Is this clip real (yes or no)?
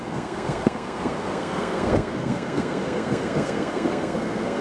no